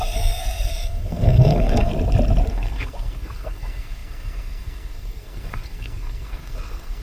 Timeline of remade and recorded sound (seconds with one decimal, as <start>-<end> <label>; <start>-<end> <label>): 0.0-1.9 remade; 1.9-2.5 recorded; 2.5-7.0 remade